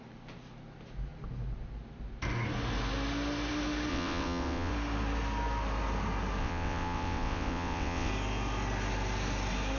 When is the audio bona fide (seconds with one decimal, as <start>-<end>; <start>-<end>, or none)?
0.0-3.9; 4.7-6.4; 8.1-9.8